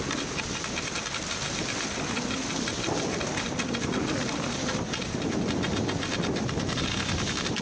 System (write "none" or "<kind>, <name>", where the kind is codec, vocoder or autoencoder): none